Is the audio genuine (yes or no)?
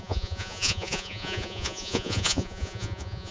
no